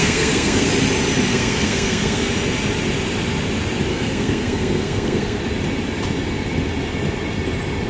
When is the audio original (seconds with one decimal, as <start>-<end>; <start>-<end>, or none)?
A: 0.7-1.3; 2.3-3.9; 5.4-7.9